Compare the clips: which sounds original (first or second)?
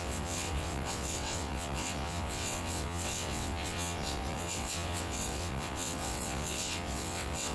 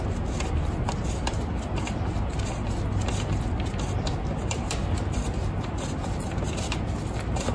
second